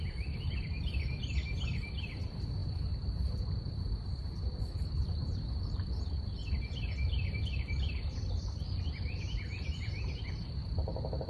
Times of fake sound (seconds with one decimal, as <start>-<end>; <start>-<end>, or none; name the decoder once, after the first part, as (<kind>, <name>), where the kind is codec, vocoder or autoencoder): 0.0-1.4 (vocoder, BigVGAN v2); 2.0-2.6; 5.5-6.4; 7.4-11.3